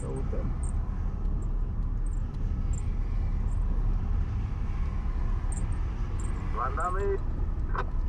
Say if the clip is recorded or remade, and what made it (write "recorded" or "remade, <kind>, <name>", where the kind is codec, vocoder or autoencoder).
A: recorded